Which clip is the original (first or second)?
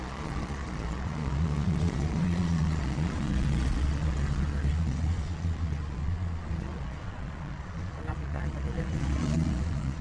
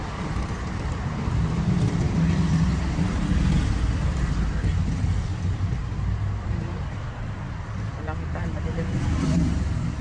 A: second